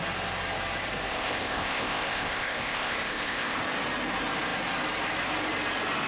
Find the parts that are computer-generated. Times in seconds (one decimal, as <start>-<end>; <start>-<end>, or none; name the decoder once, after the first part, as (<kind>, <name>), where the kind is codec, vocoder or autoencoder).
1.1-3.6 (codec, ZipCodec)